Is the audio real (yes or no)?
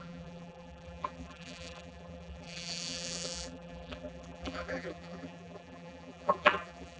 no